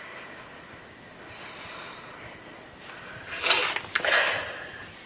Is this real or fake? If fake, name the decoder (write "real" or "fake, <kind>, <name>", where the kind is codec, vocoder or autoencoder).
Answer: real